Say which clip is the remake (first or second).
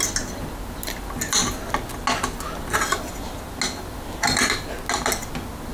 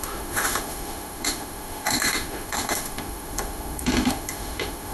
second